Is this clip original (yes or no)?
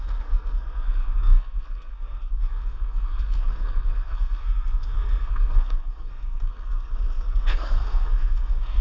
no